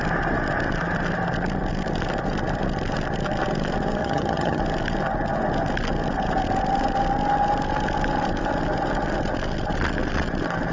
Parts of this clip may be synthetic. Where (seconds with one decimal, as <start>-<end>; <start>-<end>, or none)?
4.0-4.6